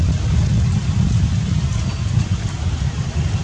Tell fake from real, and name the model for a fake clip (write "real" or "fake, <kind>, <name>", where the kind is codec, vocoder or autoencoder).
real